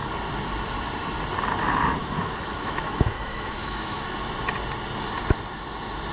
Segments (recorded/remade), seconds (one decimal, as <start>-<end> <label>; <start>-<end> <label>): 0.0-2.0 recorded; 2.0-4.0 remade; 4.0-6.1 recorded